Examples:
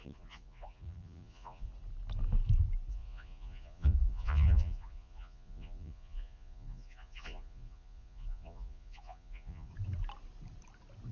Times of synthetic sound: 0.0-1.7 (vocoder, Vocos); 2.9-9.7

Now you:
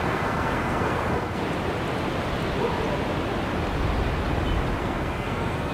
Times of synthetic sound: 0.0-1.4 (codec, SNAC); 4.8-5.7

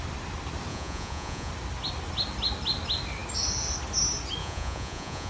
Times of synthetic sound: 0.7-1.5 (vocoder, Vocos); 4.4-5.3

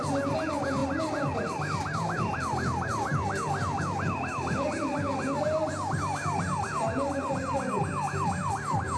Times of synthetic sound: none

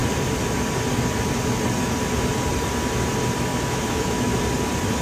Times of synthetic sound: 3.5-4.3 (autoencoder, DAC-VAE)